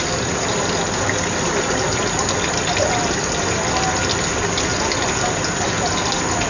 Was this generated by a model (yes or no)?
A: no